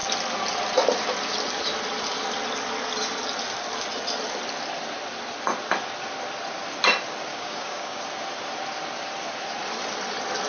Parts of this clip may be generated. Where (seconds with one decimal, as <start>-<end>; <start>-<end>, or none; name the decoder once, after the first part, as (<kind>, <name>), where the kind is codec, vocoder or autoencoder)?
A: 7.3-8.0 (codec, DAC)